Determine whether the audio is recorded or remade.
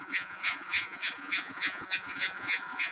remade